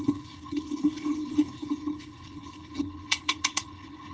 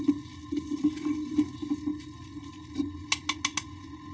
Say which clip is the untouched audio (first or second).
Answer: second